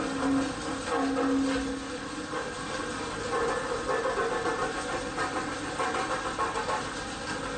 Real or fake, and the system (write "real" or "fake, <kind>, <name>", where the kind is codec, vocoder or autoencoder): real